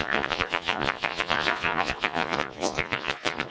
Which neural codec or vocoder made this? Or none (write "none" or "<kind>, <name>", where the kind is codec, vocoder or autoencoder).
vocoder, Vocos